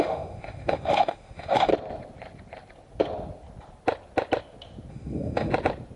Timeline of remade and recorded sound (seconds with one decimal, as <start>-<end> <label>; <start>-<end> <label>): 0.0-1.7 remade; 1.7-4.9 recorded; 4.9-5.5 remade; 5.5-6.0 recorded

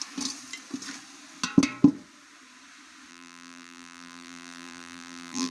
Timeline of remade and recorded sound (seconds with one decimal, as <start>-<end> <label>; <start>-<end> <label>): 0.0-3.1 recorded; 3.1-5.5 remade

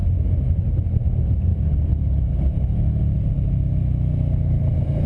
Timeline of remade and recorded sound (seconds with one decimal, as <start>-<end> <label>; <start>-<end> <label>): 0.0-0.6 recorded; 0.6-1.5 remade; 1.5-4.5 recorded; 4.5-5.1 remade

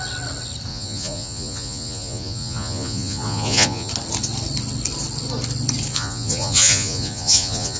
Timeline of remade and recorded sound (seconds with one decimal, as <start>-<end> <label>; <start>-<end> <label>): 0.0-0.7 recorded; 0.7-3.9 remade; 3.9-5.9 recorded; 5.9-7.8 remade

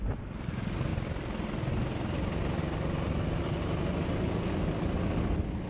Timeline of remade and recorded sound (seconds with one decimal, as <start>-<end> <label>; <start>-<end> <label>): 0.0-5.7 recorded

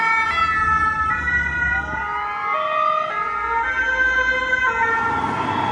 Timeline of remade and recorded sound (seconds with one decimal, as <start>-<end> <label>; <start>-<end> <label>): 0.0-5.7 recorded

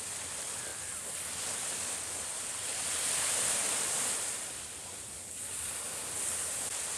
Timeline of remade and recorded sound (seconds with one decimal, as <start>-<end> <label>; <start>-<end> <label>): 0.0-7.0 remade

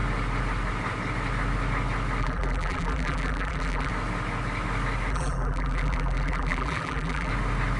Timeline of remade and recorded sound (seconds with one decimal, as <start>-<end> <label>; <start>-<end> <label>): 0.0-2.2 recorded; 2.2-3.9 remade; 3.9-5.1 recorded; 5.1-7.3 remade; 7.3-7.8 recorded